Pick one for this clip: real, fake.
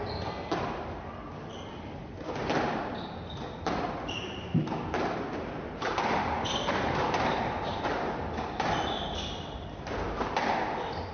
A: real